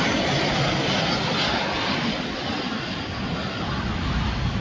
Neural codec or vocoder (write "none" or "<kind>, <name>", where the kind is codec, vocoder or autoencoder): none